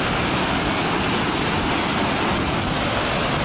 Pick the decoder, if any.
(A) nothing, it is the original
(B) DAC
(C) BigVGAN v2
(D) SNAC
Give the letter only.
A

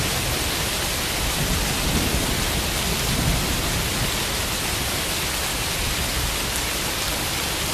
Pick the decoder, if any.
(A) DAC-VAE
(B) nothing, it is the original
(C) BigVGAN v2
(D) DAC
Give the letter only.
B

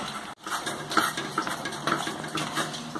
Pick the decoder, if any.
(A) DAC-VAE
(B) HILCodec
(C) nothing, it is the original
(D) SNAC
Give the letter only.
C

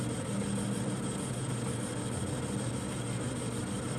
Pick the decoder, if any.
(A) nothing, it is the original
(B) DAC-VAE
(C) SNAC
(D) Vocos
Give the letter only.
A